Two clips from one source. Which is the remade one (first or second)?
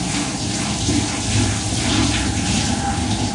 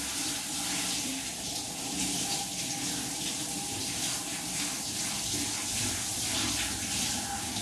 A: second